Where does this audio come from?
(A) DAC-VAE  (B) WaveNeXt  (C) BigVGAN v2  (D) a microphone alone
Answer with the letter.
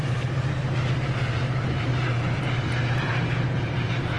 C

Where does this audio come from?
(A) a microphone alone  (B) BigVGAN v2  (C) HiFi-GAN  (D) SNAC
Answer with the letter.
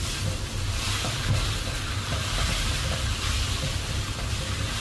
B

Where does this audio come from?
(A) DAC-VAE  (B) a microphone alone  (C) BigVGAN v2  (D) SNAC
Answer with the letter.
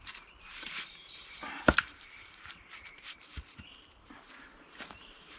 C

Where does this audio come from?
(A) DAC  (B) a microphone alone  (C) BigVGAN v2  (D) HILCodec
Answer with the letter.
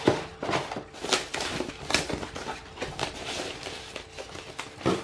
C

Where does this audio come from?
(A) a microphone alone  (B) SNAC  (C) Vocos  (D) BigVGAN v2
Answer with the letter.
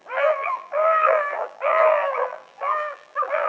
D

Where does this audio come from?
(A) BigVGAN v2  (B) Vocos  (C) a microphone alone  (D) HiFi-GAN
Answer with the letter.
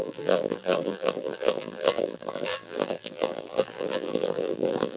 A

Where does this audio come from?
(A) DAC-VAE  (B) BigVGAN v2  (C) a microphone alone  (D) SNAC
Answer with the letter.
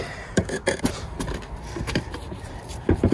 B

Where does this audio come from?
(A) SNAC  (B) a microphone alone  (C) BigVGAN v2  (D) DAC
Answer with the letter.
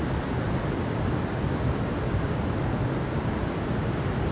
B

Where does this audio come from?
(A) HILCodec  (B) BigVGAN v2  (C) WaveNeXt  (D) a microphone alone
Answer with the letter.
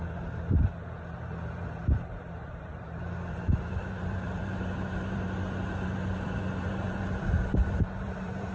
B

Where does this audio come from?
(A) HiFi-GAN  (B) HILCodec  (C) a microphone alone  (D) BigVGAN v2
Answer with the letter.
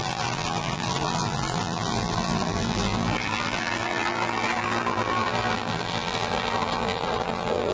D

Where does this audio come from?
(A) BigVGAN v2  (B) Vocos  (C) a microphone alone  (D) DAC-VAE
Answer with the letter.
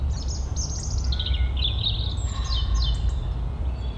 C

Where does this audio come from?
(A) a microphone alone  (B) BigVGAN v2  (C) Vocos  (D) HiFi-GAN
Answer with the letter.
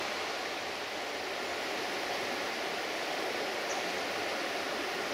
A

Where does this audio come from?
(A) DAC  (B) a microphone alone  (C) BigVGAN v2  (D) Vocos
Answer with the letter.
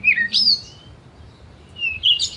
C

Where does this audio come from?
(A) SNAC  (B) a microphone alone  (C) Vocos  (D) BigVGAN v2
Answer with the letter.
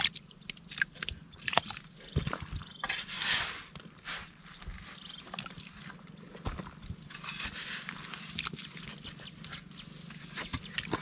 B